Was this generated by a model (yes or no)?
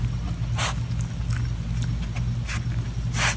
no